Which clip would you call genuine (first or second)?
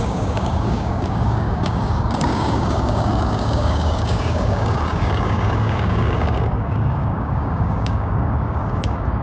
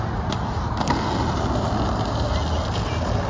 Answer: second